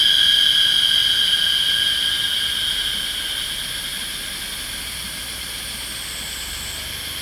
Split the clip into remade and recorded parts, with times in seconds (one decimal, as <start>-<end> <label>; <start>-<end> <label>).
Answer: 0.0-7.2 recorded